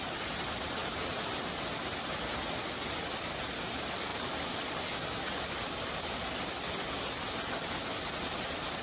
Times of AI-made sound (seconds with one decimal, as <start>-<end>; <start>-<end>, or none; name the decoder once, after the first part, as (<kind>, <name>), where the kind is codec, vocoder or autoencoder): 0.8-1.5 (vocoder, BigVGAN v2); 4.1-6.4